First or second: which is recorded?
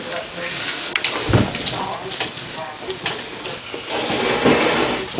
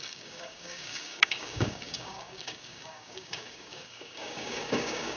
first